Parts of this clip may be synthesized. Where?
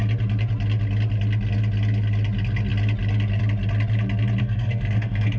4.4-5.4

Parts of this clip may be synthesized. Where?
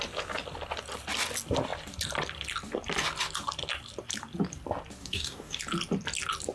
5.0-5.6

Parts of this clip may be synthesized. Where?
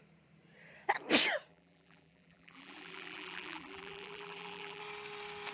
1.5-4.8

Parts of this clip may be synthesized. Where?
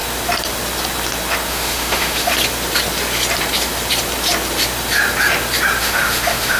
1.5-2.3; 5.8-6.6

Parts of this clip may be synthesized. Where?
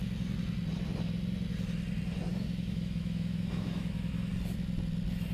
2.3-4.3